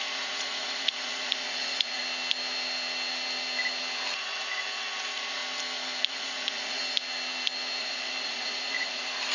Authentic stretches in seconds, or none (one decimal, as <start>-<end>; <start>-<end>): 2.0-4.2; 5.4-6.0; 6.8-7.8